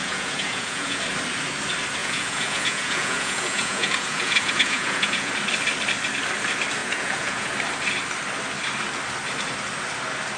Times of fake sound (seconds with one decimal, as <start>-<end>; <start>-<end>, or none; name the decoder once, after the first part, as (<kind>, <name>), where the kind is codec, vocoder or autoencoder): 0.0-1.0 (vocoder, Vocos); 2.0-5.3; 6.8-7.5